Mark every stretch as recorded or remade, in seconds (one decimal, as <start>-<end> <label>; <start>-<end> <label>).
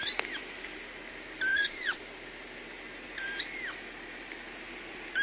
0.0-1.5 recorded; 1.5-2.0 remade; 2.0-5.2 recorded